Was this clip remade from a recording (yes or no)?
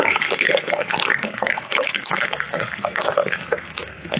yes